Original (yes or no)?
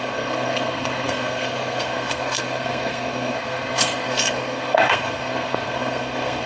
no